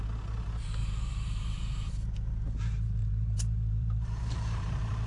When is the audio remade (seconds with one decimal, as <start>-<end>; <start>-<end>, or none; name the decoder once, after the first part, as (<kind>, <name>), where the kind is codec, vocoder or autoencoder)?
0.8-1.9 (vocoder, BigVGAN v2); 3.0-5.1